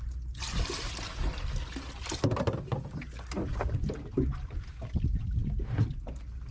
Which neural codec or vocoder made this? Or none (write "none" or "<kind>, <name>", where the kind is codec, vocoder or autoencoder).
none